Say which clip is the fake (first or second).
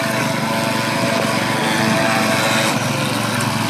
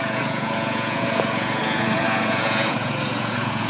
second